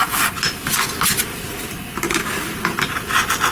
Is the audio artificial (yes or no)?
no